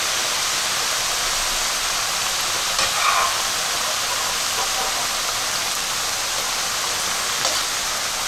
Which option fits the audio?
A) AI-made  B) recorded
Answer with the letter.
B